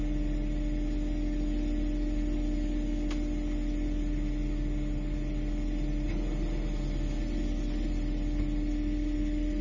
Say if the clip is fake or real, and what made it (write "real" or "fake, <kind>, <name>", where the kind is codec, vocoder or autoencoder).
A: real